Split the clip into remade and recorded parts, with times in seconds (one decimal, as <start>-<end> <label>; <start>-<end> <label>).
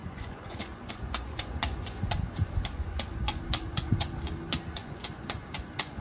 0.0-6.0 remade